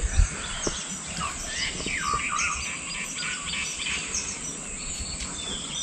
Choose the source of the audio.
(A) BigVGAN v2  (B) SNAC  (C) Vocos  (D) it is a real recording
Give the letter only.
D